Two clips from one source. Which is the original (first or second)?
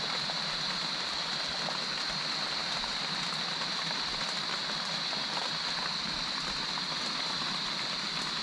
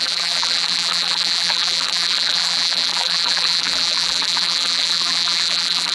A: first